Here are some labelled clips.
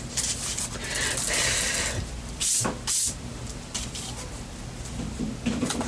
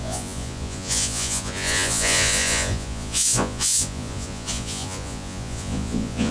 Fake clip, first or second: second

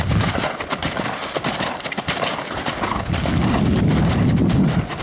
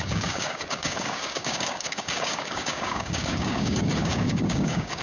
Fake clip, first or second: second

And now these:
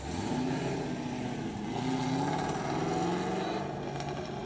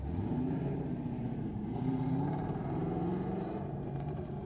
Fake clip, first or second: second